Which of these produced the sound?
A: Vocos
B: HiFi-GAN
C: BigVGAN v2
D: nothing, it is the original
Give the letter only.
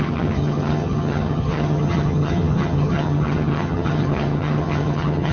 B